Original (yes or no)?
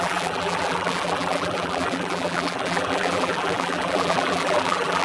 no